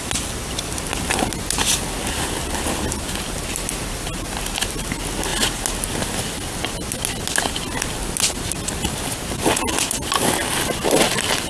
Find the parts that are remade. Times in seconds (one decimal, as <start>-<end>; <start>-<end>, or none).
none